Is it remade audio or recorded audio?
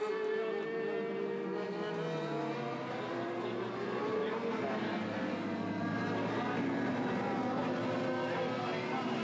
recorded